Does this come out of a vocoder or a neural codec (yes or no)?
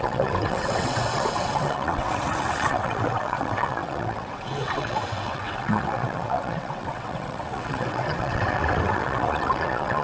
yes